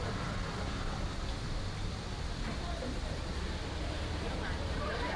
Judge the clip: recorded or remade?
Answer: remade